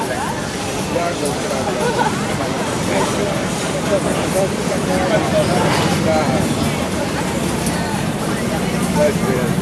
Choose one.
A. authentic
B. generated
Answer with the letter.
B